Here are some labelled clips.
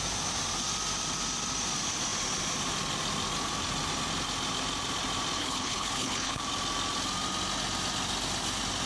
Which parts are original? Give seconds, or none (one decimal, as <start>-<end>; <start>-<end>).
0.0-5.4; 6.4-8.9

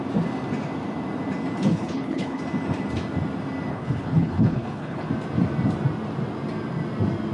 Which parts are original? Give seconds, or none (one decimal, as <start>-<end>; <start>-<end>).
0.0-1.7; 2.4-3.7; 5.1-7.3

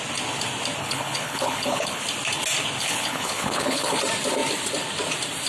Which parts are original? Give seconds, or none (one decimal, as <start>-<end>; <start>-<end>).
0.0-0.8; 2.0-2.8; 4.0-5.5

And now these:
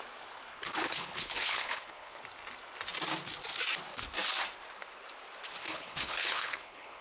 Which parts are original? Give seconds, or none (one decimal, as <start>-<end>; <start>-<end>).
0.0-0.5; 2.2-5.6

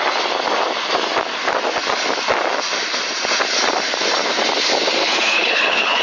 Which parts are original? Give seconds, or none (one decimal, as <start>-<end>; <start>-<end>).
0.0-5.0

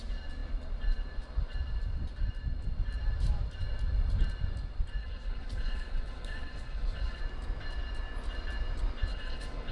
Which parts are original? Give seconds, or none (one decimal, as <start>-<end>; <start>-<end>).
0.0-5.0; 7.2-9.1

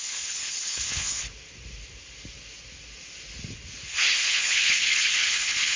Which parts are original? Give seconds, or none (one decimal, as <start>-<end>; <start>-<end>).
1.3-3.9